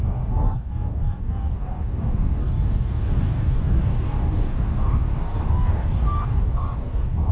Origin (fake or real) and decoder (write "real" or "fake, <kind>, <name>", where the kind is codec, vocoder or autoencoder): fake, codec, DAC